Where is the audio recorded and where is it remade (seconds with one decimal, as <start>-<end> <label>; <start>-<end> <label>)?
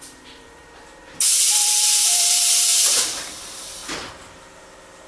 0.0-0.6 remade; 0.6-1.4 recorded; 1.4-3.8 remade; 3.8-5.1 recorded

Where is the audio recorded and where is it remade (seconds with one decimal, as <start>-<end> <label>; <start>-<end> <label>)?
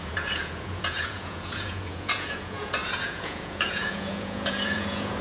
0.0-5.2 remade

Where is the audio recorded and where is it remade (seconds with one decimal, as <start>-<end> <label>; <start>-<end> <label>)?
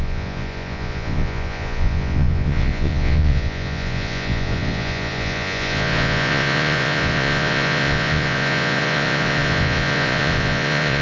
0.0-11.0 remade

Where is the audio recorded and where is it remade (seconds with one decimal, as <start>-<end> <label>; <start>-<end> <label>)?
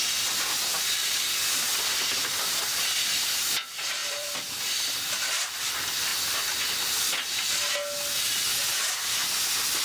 0.0-0.7 recorded; 0.7-2.8 remade; 2.8-4.0 recorded; 4.0-4.6 remade; 4.6-9.8 recorded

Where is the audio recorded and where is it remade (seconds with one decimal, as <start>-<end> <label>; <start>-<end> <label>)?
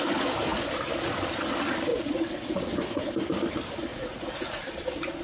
0.0-1.9 recorded; 1.9-2.6 remade; 2.6-3.9 recorded; 3.9-4.6 remade; 4.6-5.2 recorded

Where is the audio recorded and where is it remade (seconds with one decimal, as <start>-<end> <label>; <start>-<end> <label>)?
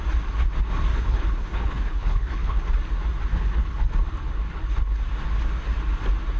0.0-0.9 recorded; 0.9-2.6 remade; 2.6-3.3 recorded; 3.3-3.9 remade; 3.9-6.4 recorded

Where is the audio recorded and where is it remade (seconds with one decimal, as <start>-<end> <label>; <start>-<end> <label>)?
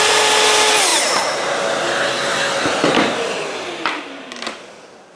0.0-5.2 recorded